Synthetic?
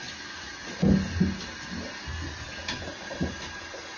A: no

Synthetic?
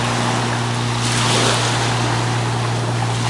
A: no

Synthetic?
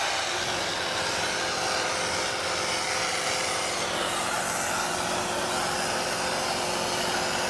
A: no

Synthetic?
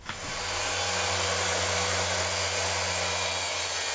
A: no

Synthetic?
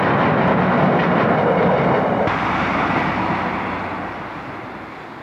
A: no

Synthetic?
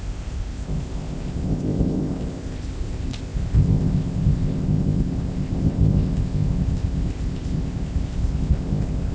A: yes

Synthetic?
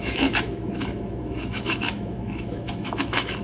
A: yes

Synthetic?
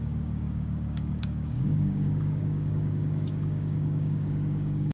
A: yes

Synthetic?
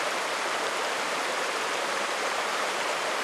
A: yes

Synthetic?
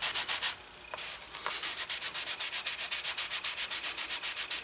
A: no